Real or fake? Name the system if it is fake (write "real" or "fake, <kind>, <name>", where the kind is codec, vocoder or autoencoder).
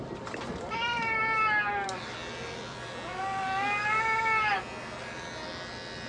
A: real